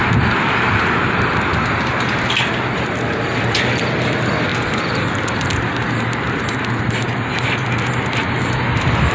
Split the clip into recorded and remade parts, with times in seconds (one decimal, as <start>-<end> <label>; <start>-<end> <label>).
0.0-9.1 recorded